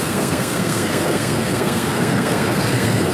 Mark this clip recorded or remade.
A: remade